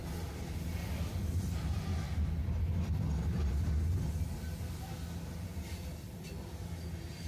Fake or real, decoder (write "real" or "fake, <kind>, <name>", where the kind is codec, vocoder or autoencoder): real